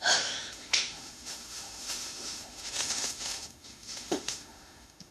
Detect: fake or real fake